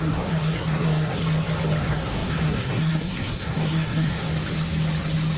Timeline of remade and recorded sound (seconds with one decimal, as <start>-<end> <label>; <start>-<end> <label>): 0.0-1.2 remade; 1.2-1.8 recorded; 1.8-4.3 remade; 4.3-5.4 recorded